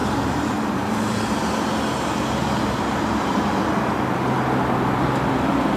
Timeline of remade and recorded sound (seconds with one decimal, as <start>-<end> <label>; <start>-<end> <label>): 0.0-0.9 remade; 0.9-2.4 recorded; 2.4-3.7 remade; 3.7-5.8 recorded